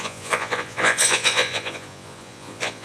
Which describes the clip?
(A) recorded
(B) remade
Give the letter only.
B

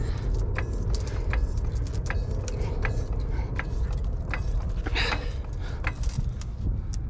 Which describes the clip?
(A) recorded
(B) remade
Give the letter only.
A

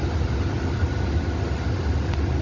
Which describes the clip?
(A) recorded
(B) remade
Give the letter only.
A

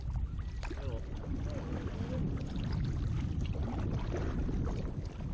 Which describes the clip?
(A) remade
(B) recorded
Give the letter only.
B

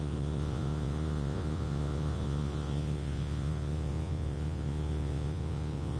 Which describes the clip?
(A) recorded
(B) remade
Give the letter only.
B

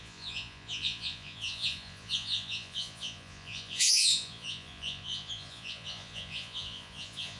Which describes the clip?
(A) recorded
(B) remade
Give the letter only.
B